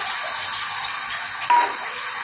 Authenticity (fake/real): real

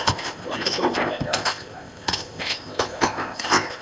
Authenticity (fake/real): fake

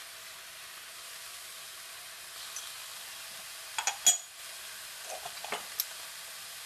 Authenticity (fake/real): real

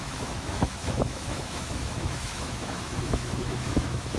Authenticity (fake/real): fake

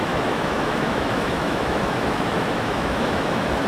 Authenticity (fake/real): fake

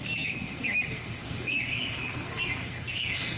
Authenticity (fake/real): fake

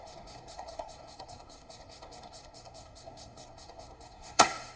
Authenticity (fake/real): fake